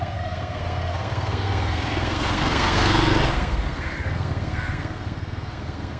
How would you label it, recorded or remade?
remade